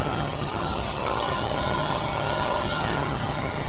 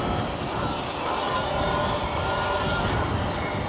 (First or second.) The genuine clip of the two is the second